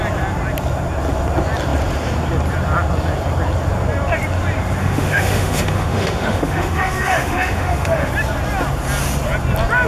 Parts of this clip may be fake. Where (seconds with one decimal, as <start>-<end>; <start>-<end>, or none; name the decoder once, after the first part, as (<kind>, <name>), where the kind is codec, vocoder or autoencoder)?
4.8-8.1 (autoencoder, DAC-VAE)

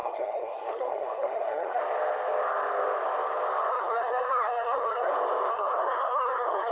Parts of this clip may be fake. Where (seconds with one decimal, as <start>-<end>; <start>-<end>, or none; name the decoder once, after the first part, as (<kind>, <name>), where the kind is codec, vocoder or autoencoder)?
0.0-1.8 (codec, SNAC); 3.7-5.1; 5.5-6.7

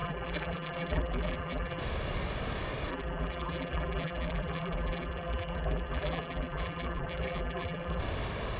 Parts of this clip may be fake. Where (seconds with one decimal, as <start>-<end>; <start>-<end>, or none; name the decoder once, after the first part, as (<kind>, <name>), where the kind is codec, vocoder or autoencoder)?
0.0-1.8 (vocoder, BigVGAN v2); 2.9-8.0

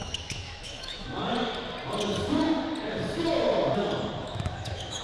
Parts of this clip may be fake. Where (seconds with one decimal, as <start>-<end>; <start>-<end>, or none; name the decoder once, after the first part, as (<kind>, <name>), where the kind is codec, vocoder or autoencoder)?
0.0-1.2 (autoencoder, DAC-VAE); 4.2-5.0